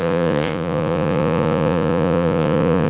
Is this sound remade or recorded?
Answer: remade